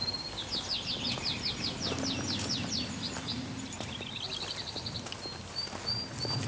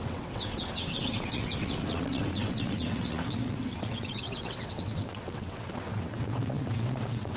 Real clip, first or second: first